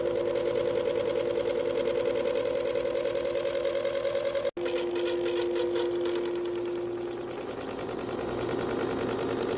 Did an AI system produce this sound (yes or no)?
no